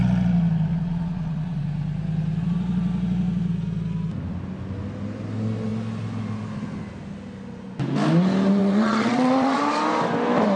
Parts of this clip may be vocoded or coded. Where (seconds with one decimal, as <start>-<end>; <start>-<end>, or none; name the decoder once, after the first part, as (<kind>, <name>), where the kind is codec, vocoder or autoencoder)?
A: 0.7-1.6 (vocoder, Vocos); 8.6-9.6